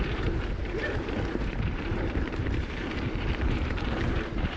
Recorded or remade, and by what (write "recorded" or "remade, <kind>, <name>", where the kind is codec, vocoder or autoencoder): remade, vocoder, BigVGAN v2